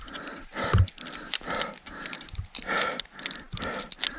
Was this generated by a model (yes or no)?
no